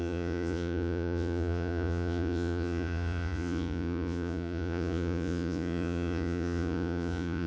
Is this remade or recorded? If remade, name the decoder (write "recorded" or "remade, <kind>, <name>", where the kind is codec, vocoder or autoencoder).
remade, vocoder, Vocos